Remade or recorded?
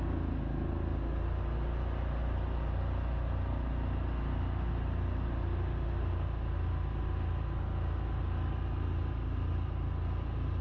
recorded